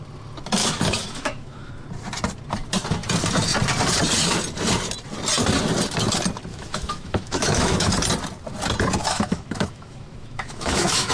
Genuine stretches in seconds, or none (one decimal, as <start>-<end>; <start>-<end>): 0.0-0.6; 1.7-6.5; 7.9-9.0